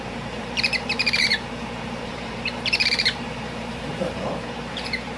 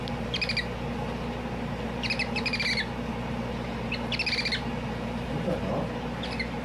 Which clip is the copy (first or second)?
first